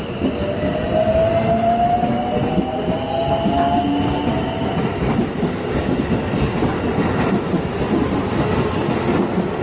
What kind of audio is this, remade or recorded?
recorded